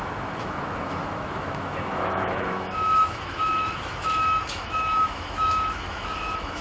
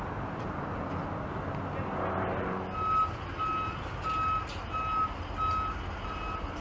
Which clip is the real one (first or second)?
second